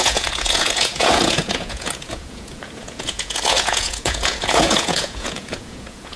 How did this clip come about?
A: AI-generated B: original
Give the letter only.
A